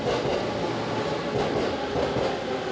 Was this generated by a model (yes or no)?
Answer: no